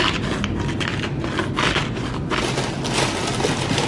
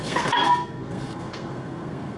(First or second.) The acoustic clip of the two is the first